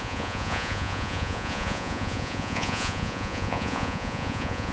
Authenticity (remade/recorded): remade